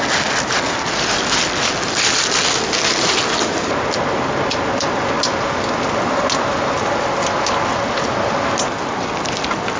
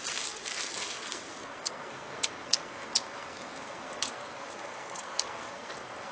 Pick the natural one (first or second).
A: first